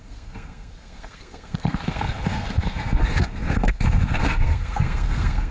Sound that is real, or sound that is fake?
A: fake